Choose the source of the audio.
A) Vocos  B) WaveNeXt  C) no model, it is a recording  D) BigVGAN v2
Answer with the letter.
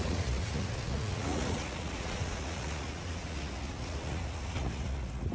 A